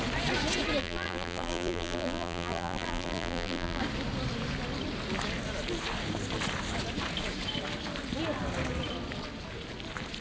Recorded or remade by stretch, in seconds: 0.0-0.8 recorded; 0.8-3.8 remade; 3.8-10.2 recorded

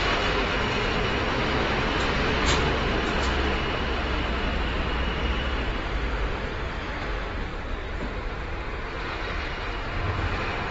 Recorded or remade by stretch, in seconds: 0.0-4.5 recorded; 4.5-6.7 remade; 6.7-7.5 recorded; 7.5-8.3 remade; 8.3-10.7 recorded

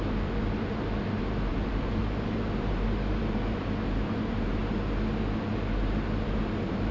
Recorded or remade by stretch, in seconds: 0.0-4.6 remade; 4.6-5.5 recorded; 5.5-6.9 remade

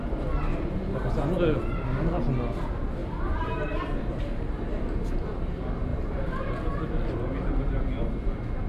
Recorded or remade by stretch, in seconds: 0.0-0.5 recorded; 0.5-1.1 remade; 1.1-3.0 recorded; 3.0-4.0 remade; 4.0-5.9 recorded; 5.9-6.5 remade; 6.5-8.7 recorded

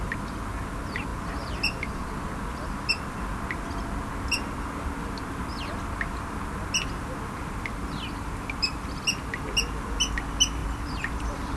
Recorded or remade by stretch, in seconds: 0.0-10.6 recorded; 10.6-11.6 remade

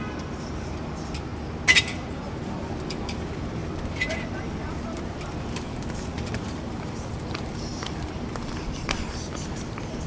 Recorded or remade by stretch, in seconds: 0.0-1.3 remade; 1.3-1.8 recorded; 1.8-3.6 remade; 3.6-5.3 recorded; 5.3-10.1 remade

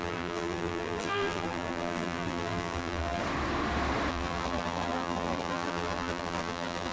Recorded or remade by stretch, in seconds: 0.0-3.2 remade; 3.2-4.1 recorded; 4.1-6.9 remade